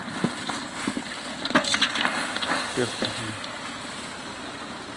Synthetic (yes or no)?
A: yes